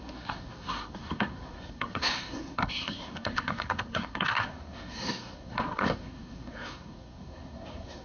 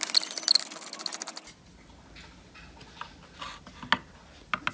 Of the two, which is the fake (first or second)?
first